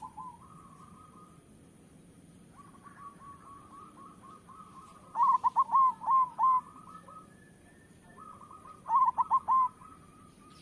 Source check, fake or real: fake